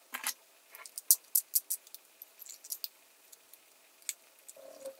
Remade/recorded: recorded